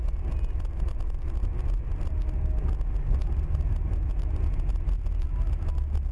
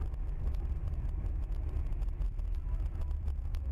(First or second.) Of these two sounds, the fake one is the second